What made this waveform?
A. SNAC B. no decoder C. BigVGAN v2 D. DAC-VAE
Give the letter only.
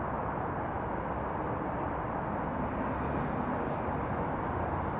B